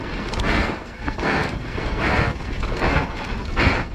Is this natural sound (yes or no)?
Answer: no